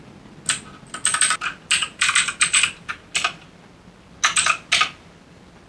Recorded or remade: recorded